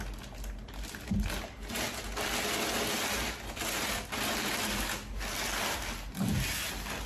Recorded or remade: recorded